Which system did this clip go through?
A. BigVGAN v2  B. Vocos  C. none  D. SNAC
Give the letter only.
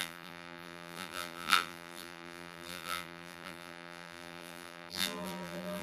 A